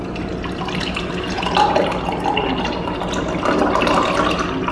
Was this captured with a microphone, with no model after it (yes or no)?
yes